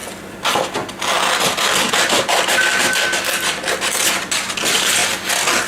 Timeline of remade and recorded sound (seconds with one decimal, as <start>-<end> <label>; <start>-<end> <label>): 0.0-5.7 recorded